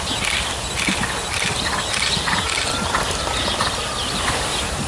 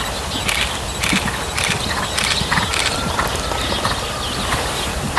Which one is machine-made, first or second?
first